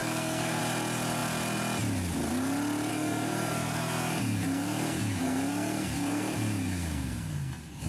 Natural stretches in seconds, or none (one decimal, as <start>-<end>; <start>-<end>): 0.6-2.9